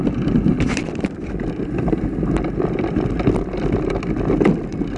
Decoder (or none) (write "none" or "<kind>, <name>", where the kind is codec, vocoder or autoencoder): none